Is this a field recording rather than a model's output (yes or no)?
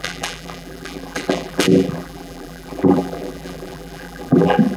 no